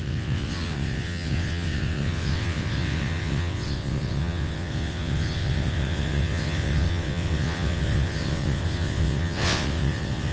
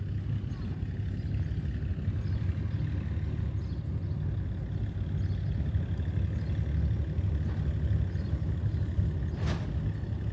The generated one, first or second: first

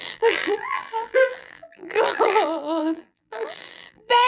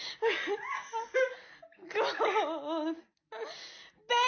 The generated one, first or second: first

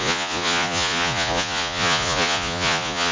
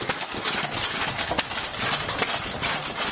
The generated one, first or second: first